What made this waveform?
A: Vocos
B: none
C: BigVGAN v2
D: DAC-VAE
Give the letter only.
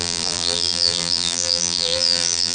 C